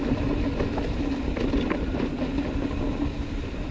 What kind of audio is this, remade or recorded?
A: recorded